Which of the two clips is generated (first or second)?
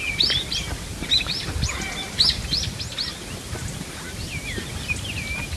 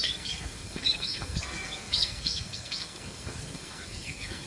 second